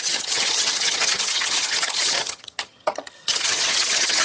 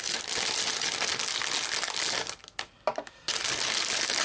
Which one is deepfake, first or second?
first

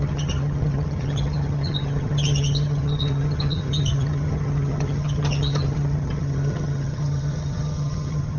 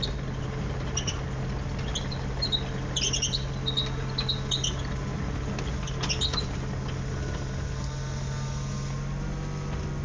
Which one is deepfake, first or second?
first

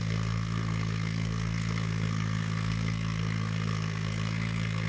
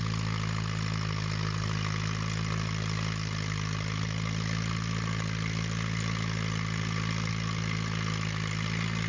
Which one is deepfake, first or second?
first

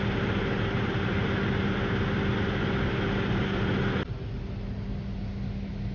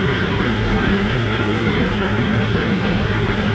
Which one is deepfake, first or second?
second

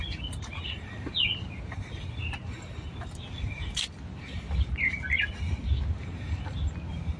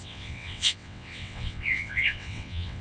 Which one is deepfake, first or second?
second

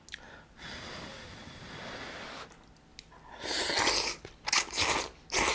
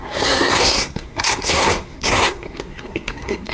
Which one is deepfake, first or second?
second